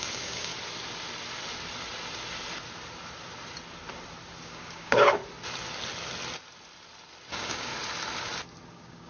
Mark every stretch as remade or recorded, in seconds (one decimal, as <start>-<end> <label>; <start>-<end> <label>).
0.0-0.5 remade; 0.5-4.4 recorded; 4.4-5.2 remade; 5.2-7.3 recorded; 7.3-7.7 remade; 7.7-8.7 recorded; 8.7-9.1 remade